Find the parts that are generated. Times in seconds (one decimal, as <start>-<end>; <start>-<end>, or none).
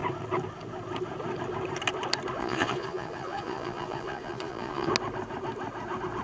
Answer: 2.4-4.9